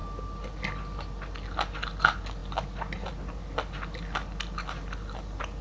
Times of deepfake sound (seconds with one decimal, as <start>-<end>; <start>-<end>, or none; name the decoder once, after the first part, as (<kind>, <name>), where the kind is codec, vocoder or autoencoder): none